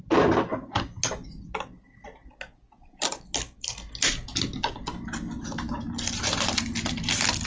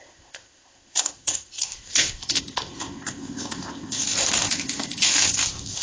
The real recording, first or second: first